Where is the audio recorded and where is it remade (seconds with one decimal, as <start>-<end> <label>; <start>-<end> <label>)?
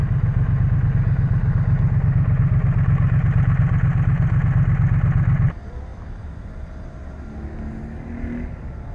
0.0-8.9 recorded